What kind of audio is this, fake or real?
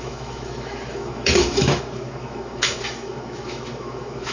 fake